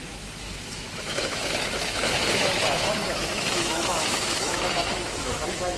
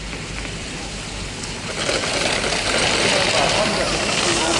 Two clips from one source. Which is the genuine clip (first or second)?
second